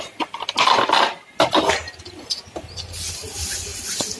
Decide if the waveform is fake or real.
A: real